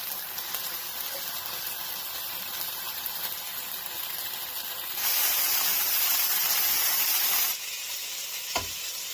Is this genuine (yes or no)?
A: yes